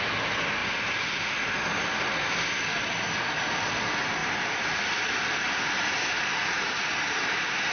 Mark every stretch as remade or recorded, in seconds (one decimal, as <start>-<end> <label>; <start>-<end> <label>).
0.0-4.2 recorded; 4.2-4.8 remade; 4.8-6.4 recorded; 6.4-6.9 remade; 6.9-7.7 recorded

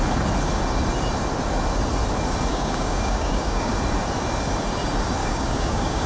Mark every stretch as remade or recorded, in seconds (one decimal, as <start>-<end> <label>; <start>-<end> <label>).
0.0-2.5 recorded; 2.5-3.7 remade; 3.7-5.2 recorded; 5.2-6.1 remade